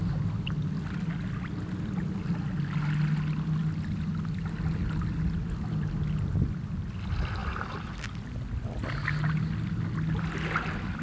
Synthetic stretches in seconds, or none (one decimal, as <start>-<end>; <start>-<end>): none